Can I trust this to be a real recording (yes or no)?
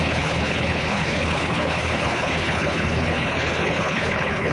no